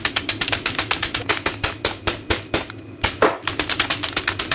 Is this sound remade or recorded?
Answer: recorded